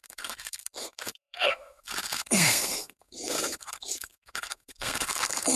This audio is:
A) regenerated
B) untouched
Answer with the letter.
A